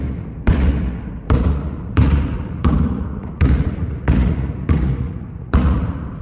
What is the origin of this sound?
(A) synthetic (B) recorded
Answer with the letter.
A